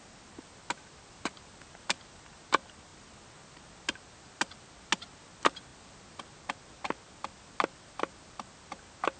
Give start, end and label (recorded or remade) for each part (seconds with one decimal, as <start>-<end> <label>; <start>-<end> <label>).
0.0-9.2 recorded